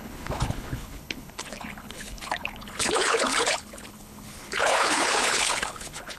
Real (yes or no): no